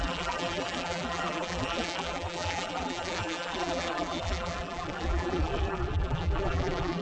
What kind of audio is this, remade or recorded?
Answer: remade